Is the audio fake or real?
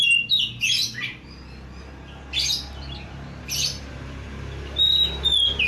real